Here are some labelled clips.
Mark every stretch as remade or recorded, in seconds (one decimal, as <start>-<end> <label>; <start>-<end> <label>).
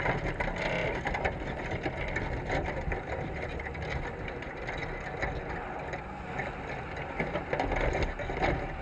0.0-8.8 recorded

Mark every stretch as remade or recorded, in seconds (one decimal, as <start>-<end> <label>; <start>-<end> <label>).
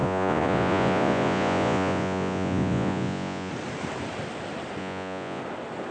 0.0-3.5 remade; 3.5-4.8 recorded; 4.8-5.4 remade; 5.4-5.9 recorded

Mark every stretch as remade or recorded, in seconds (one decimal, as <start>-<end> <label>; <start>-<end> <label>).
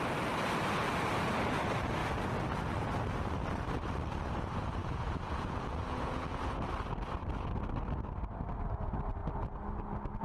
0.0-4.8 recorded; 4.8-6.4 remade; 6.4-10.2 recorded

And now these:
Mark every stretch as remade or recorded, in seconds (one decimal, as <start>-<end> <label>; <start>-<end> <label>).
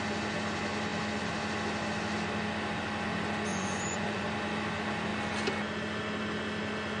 0.0-3.5 recorded; 3.5-4.2 remade; 4.2-7.0 recorded